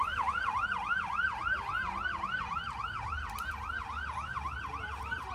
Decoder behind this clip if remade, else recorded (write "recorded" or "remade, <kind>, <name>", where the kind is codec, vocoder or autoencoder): recorded